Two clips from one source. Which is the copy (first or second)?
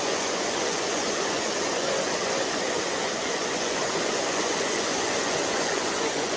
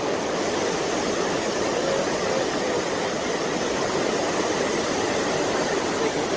first